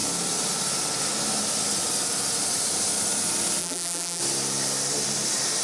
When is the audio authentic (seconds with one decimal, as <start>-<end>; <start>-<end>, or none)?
0.0-3.6; 4.2-5.6